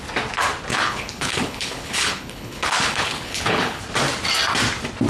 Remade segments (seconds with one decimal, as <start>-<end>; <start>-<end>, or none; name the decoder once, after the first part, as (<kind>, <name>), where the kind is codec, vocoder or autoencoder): 0.7-3.8 (codec, HILCodec)